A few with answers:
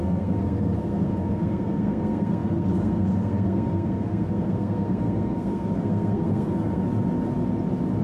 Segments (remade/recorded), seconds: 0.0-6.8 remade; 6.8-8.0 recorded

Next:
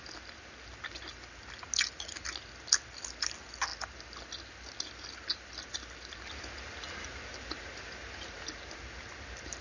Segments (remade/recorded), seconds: 0.0-9.6 recorded

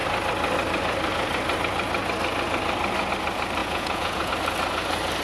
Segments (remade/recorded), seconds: 0.0-3.6 recorded; 3.6-4.3 remade; 4.3-5.2 recorded